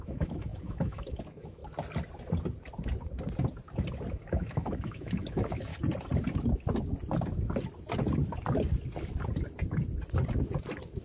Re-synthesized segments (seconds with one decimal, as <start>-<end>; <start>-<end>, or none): 0.0-1.6; 4.1-5.7